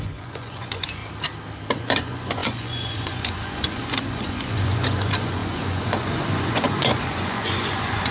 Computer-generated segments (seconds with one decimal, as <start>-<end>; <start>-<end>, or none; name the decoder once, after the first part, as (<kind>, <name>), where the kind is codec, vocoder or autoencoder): 0.0-1.0 (vocoder, Vocos); 1.8-8.1